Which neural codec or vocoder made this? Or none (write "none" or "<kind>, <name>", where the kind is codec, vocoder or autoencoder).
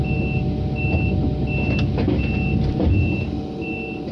none